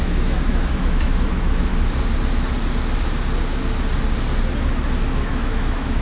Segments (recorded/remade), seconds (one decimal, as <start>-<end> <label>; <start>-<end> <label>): 0.0-1.7 remade; 1.7-5.3 recorded; 5.3-6.0 remade